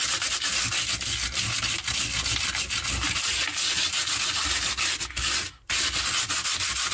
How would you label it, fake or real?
real